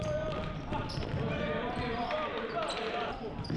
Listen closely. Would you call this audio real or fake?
real